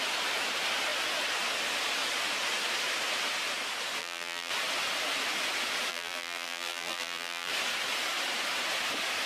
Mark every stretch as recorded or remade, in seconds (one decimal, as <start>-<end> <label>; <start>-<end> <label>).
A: 0.0-4.0 recorded; 4.0-4.5 remade; 4.5-5.9 recorded; 5.9-7.5 remade; 7.5-9.3 recorded